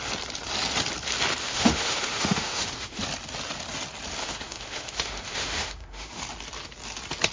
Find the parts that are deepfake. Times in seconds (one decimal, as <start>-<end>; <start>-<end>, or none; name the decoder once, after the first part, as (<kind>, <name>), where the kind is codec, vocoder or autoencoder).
1.4-3.0 (autoencoder, DAC-VAE); 4.2-6.2